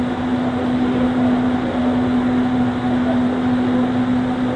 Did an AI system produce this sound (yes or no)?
no